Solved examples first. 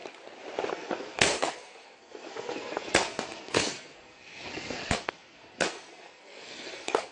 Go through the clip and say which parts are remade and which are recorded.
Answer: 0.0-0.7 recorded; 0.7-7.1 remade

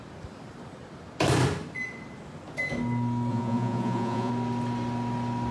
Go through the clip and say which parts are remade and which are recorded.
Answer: 0.0-3.3 recorded; 3.3-4.3 remade; 4.3-5.5 recorded

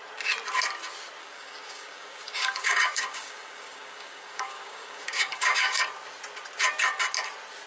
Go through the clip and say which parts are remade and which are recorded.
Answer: 0.0-1.2 recorded; 1.2-5.8 remade; 5.8-7.7 recorded

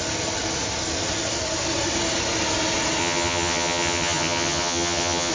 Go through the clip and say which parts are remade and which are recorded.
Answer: 0.0-3.0 recorded; 3.0-5.3 remade

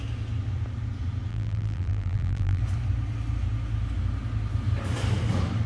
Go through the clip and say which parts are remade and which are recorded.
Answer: 0.0-1.3 recorded; 1.3-2.6 remade; 2.6-5.7 recorded

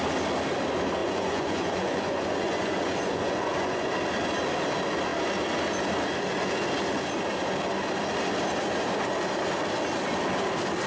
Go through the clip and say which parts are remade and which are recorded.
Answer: 0.0-1.0 recorded; 1.0-3.9 remade; 3.9-10.9 recorded

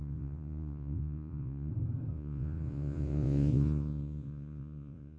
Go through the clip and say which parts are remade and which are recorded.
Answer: 0.0-1.7 remade; 1.7-2.1 recorded; 2.1-5.2 remade